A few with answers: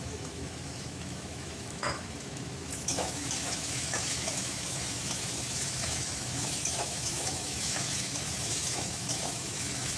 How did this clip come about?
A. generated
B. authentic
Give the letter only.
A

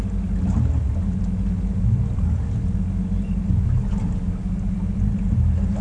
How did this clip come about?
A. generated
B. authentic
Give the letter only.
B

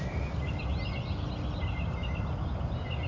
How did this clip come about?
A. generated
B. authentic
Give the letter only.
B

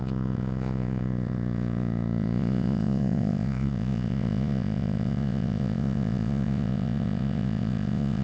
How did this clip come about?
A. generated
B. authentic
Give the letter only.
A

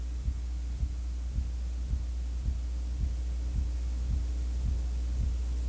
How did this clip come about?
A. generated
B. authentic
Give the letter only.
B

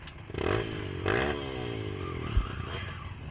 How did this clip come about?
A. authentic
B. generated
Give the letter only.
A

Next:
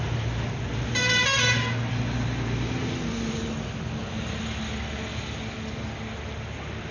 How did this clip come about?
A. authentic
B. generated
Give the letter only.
A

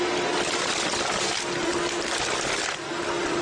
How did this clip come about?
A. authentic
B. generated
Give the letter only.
A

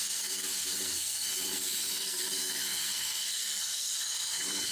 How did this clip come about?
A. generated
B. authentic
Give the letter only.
A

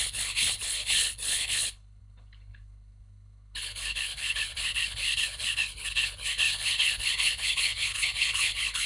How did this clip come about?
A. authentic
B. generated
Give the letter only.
B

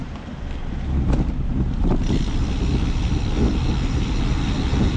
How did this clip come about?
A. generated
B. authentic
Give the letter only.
B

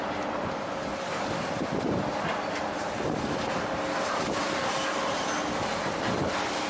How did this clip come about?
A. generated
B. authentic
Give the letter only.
A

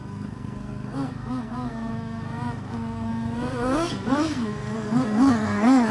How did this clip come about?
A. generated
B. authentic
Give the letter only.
A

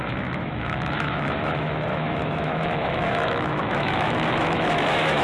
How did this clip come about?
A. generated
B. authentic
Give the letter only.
A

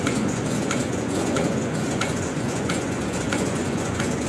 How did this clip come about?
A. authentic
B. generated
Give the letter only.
B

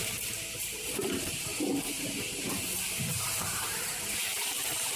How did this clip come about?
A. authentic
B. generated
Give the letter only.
B